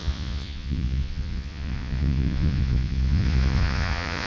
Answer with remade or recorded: remade